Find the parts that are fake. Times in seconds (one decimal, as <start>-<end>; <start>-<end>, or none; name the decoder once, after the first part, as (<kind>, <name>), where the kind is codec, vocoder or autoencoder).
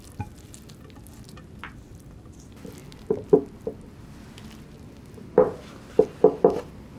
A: none